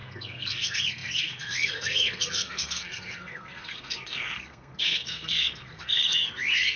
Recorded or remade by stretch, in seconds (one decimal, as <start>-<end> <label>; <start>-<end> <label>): 0.0-6.8 remade